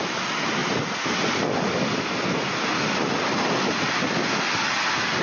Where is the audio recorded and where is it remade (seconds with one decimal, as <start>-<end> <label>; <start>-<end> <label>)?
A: 0.0-5.2 recorded